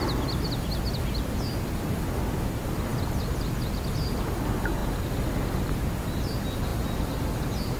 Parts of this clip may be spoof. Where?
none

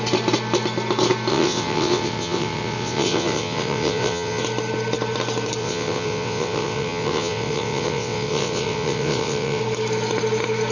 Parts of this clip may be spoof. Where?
1.3-4.4 (vocoder, WaveNeXt); 5.6-9.6